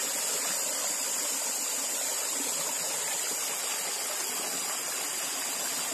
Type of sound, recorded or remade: recorded